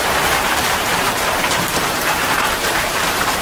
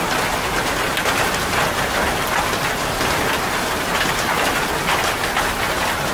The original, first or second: second